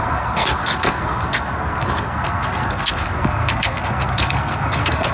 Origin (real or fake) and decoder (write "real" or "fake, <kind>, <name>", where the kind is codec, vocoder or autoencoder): fake, codec, SNAC